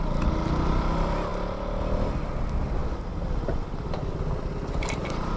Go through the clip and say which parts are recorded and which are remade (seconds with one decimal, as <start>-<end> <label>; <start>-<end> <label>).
0.0-5.4 recorded